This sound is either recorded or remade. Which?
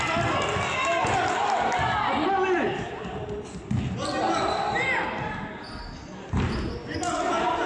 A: recorded